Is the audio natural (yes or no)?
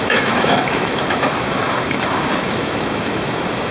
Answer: no